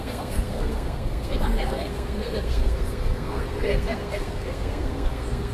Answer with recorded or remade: remade